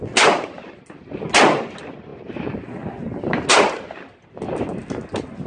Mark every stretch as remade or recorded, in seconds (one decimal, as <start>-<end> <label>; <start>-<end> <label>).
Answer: 0.0-5.5 recorded